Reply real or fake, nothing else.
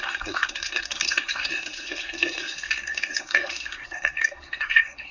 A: fake